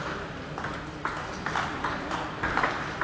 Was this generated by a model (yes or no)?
no